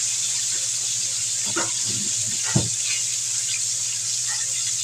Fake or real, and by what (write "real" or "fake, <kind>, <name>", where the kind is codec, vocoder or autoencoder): real